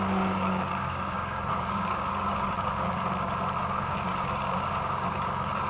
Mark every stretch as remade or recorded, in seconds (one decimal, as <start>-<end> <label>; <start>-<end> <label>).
0.0-3.0 remade; 3.0-3.6 recorded; 3.6-5.7 remade

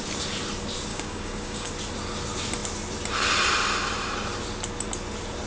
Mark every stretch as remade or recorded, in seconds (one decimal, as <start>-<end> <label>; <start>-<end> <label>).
0.0-0.9 recorded; 0.9-1.7 remade; 1.7-5.5 recorded

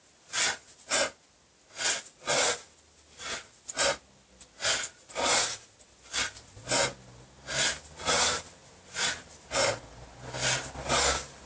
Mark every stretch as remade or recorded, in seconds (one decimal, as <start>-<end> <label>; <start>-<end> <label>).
0.0-11.5 recorded

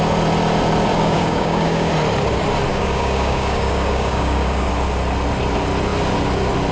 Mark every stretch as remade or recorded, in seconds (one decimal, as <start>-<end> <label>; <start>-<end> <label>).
0.0-0.9 recorded; 0.9-1.9 remade; 1.9-2.7 recorded; 2.7-4.7 remade; 4.7-6.7 recorded

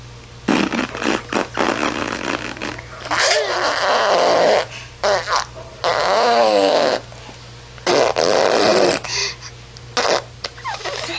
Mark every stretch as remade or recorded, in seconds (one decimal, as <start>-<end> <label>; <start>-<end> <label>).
0.0-6.0 recorded; 6.0-7.0 remade; 7.0-11.2 recorded

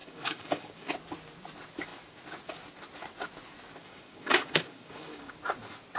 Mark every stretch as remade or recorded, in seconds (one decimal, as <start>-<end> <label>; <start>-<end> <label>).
0.0-0.9 remade; 0.9-3.8 recorded; 3.8-5.3 remade; 5.3-6.0 recorded

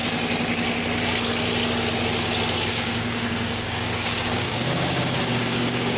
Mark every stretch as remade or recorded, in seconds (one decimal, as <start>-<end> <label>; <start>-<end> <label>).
0.0-2.7 recorded; 2.7-6.0 remade

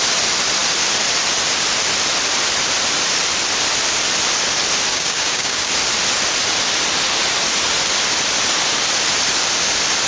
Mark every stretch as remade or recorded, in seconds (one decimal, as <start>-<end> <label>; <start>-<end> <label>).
0.0-4.9 recorded; 4.9-5.7 remade; 5.7-10.1 recorded